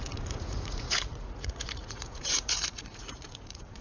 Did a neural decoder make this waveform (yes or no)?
yes